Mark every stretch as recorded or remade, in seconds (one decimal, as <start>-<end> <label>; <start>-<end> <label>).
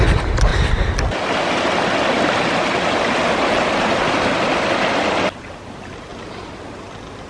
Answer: 0.0-7.3 recorded